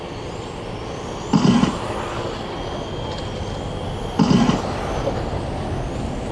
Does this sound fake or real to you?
real